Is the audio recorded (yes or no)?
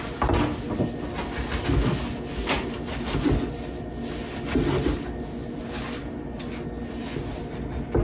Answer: yes